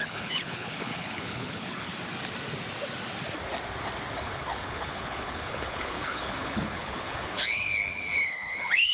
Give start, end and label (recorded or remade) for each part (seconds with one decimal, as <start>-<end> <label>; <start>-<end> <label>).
0.0-1.9 remade; 1.9-4.2 recorded; 4.2-8.9 remade